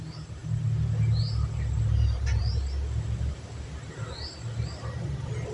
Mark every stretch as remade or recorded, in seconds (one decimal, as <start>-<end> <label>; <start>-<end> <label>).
0.0-5.5 recorded